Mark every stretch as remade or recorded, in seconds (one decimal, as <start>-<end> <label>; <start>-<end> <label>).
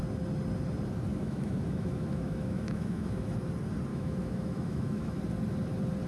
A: 0.0-1.1 recorded; 1.1-3.4 remade; 3.4-3.9 recorded; 3.9-5.2 remade; 5.2-6.1 recorded